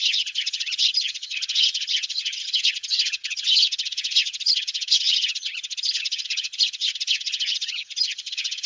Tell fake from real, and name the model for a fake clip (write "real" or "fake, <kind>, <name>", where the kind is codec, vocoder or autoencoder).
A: fake, vocoder, HiFi-GAN